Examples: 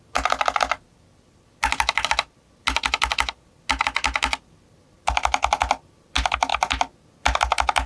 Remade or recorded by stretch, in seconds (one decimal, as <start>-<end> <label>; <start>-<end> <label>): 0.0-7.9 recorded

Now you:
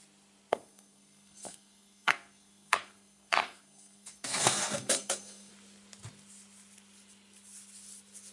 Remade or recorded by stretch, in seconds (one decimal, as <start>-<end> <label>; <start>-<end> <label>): 0.0-0.5 recorded; 0.5-5.5 remade; 5.5-8.3 recorded

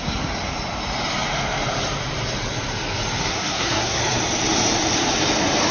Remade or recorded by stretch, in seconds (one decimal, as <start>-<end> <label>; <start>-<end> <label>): 0.0-3.2 recorded; 3.2-4.0 remade; 4.0-5.7 recorded

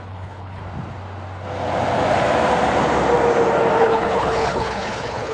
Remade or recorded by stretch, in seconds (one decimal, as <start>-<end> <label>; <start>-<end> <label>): 0.0-0.6 remade; 0.6-3.8 recorded; 3.8-5.3 remade

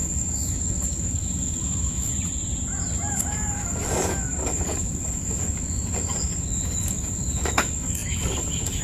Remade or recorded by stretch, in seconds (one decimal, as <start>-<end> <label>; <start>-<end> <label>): 0.0-2.1 remade; 2.1-3.1 recorded; 3.1-8.8 remade

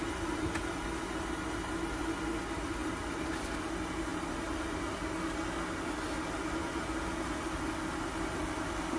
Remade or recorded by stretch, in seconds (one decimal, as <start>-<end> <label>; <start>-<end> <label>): 0.0-9.0 recorded

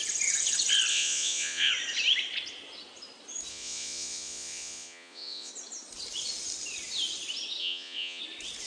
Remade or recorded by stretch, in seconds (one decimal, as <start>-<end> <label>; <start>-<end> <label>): 0.0-0.9 recorded; 0.9-1.7 remade; 1.7-3.5 recorded; 3.5-5.5 remade; 5.5-7.6 recorded; 7.6-8.2 remade; 8.2-8.7 recorded

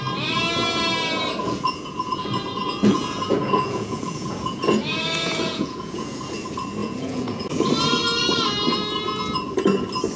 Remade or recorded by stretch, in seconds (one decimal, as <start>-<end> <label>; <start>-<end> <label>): 0.0-1.4 recorded; 1.4-6.2 remade; 6.2-6.8 recorded; 6.8-7.5 remade; 7.5-10.2 recorded